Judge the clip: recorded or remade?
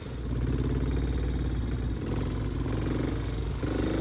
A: recorded